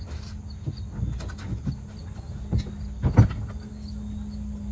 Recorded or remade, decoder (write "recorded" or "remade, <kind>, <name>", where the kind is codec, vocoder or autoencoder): recorded